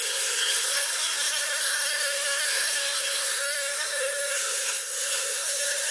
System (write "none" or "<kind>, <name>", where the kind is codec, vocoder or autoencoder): codec, SNAC